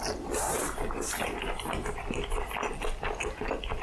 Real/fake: real